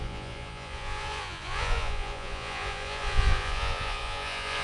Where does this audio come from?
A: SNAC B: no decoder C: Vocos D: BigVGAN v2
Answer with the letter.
C